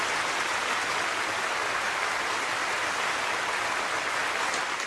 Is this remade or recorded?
recorded